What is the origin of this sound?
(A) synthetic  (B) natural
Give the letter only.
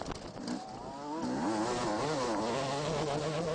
B